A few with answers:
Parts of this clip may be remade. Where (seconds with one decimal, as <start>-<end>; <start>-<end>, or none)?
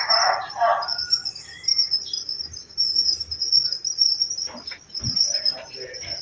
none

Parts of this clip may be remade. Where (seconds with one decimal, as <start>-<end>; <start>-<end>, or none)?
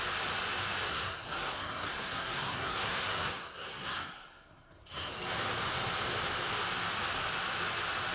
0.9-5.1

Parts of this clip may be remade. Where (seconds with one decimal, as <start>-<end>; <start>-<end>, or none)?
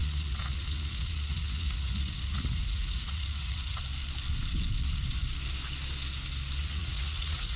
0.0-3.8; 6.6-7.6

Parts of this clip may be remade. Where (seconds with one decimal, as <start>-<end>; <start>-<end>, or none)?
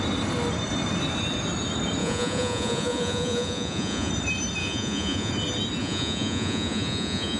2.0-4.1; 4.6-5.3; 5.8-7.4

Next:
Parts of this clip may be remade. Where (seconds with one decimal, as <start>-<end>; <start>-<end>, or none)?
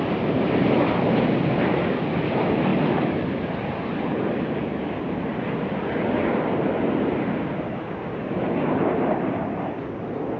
none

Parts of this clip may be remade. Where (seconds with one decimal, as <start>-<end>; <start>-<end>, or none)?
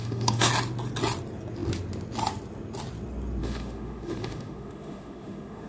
0.0-0.5; 3.4-5.7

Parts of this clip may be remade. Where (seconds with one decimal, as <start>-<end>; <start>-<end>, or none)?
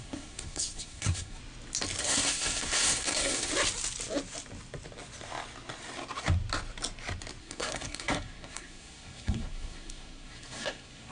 0.0-1.4; 2.0-3.5; 7.4-11.1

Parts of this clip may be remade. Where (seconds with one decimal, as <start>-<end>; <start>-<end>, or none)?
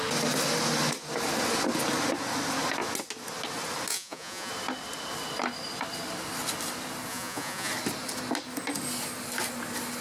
3.9-4.5; 7.1-7.7